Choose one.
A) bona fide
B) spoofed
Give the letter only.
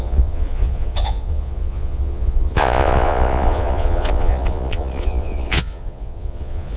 B